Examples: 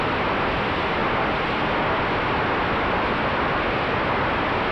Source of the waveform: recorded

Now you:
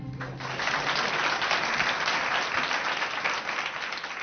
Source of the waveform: recorded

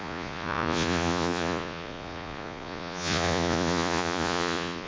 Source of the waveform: remade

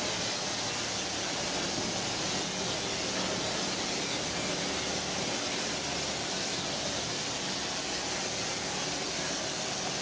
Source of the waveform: recorded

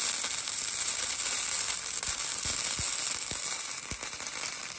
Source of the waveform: recorded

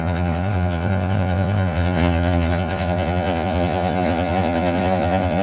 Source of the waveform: remade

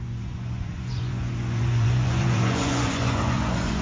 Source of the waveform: remade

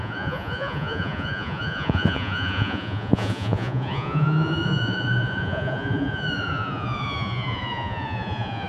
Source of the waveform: remade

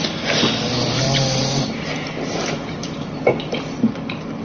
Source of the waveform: recorded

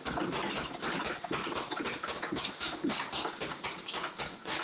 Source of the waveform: recorded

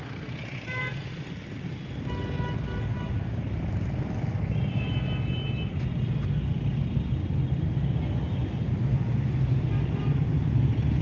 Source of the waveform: recorded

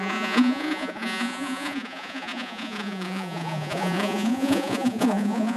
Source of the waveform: remade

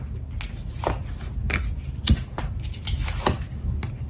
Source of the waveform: recorded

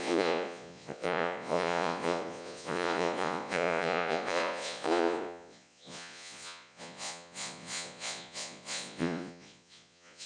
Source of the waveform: remade